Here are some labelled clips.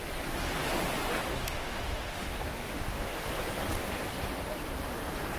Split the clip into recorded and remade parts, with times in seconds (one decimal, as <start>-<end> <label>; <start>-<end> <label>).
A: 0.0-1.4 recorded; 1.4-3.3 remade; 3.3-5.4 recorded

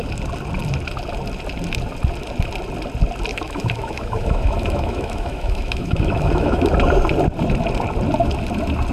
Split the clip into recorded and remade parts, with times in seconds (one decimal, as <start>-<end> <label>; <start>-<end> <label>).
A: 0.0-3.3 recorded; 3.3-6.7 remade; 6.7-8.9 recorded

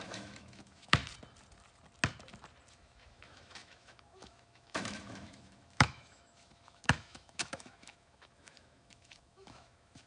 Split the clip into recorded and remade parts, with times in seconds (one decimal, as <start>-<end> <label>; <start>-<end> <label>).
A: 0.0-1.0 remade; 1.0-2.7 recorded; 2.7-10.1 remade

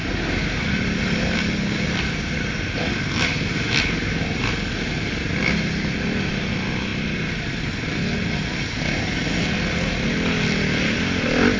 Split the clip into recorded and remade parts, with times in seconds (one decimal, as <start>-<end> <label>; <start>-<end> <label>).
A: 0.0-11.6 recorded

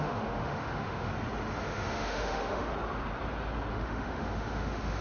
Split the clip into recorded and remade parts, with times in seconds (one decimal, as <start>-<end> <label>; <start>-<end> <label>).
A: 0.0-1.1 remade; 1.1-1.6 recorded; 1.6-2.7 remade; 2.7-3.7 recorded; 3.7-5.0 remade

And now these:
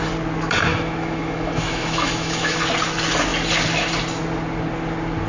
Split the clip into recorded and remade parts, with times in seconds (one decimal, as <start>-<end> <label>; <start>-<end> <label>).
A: 0.0-0.7 recorded; 0.7-2.6 remade; 2.6-5.3 recorded

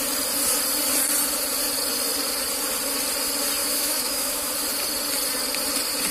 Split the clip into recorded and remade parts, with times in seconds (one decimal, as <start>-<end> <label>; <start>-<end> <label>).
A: 0.0-3.6 recorded; 3.6-4.5 remade; 4.5-6.1 recorded

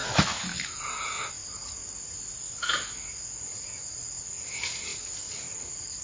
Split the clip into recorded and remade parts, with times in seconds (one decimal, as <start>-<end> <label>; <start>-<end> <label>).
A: 0.0-0.8 remade; 0.8-6.0 recorded